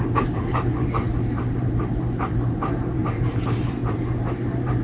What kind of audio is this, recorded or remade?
remade